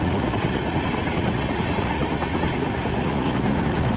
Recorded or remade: remade